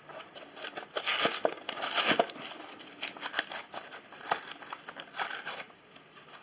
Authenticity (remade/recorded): recorded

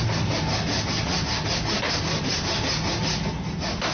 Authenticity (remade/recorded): recorded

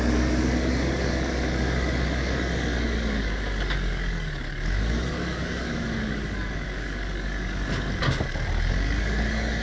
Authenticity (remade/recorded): remade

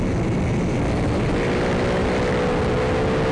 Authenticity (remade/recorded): recorded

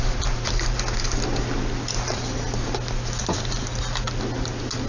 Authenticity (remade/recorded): recorded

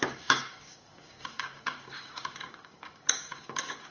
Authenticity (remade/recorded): remade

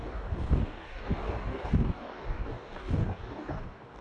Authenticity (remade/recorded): remade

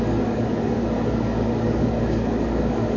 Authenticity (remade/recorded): remade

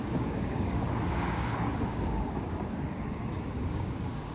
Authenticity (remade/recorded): remade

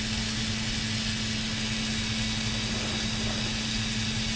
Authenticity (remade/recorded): recorded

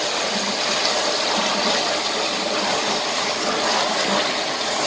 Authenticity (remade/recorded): recorded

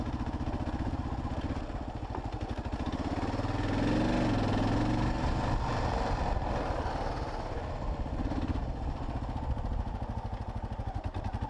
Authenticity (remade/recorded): recorded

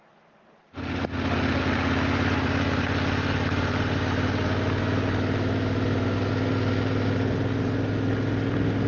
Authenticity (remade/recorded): recorded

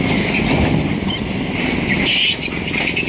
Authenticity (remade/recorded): recorded